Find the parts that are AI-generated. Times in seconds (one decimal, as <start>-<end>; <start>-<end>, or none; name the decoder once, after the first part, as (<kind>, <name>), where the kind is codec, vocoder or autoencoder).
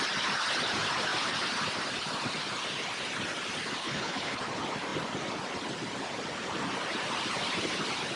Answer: 3.8-4.4 (codec, HILCodec)